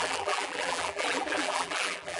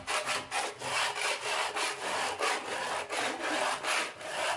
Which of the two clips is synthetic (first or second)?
first